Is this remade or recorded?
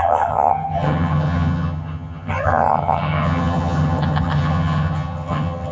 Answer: remade